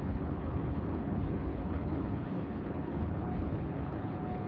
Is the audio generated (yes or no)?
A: yes